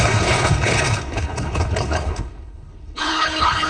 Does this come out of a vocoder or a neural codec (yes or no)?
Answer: yes